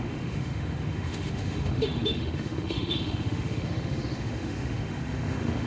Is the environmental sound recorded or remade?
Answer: remade